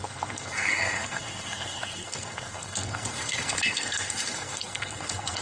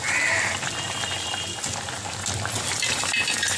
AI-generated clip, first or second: first